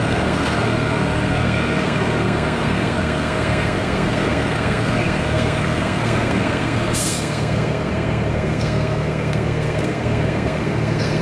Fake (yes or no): yes